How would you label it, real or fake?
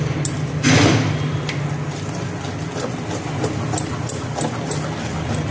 real